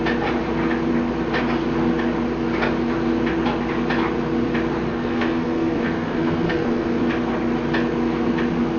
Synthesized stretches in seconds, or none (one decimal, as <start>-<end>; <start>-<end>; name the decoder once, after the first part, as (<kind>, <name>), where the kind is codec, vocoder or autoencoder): 4.9-7.0 (codec, SNAC)